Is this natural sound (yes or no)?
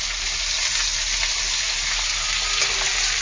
yes